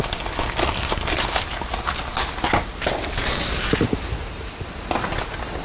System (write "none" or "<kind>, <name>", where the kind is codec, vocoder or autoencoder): none